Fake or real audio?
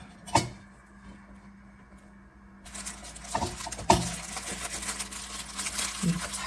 real